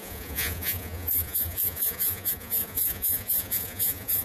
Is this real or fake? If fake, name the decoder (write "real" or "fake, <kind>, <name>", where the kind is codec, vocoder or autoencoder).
fake, vocoder, Vocos